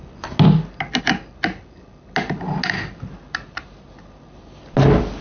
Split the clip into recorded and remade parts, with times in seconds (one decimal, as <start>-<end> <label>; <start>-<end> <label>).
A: 0.0-5.2 recorded